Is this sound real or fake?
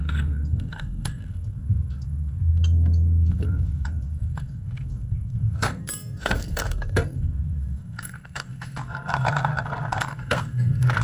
fake